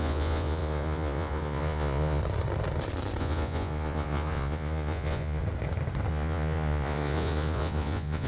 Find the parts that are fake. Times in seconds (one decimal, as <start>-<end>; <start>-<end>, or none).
0.0-2.2; 3.2-5.4; 6.1-8.3